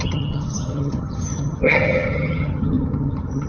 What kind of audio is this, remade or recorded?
remade